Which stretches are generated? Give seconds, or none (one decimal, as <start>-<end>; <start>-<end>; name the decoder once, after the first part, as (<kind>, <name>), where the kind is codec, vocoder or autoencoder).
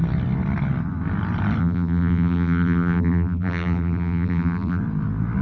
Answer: 1.6-4.8 (vocoder, BigVGAN v2)